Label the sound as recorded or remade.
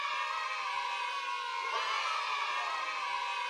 recorded